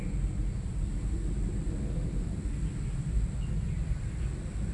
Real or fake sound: real